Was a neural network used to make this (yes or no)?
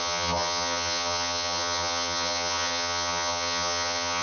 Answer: yes